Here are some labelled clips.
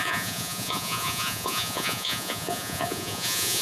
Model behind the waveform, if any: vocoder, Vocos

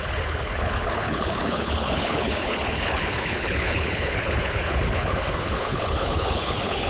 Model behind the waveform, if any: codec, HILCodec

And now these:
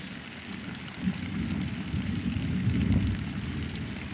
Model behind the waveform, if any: none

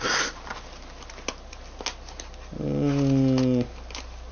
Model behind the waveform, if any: none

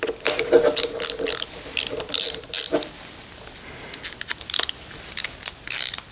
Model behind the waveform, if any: none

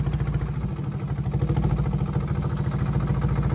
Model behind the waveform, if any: none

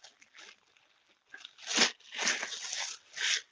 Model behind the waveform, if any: none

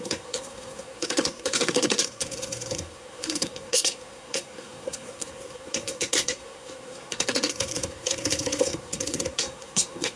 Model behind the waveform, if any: codec, SNAC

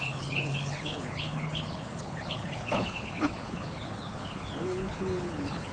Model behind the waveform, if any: codec, HILCodec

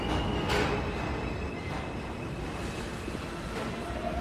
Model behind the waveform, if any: none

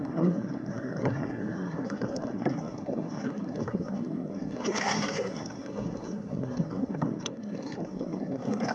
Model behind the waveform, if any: codec, SNAC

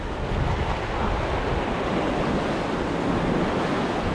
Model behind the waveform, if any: none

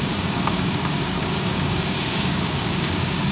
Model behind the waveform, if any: codec, DAC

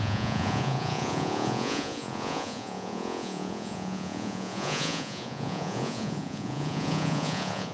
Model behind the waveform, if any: vocoder, Vocos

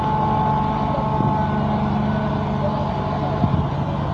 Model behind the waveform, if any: none